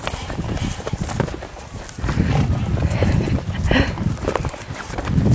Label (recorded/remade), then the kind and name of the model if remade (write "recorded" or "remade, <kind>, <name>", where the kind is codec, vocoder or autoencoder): recorded